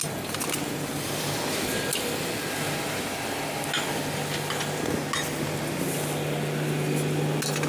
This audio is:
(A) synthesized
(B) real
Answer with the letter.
B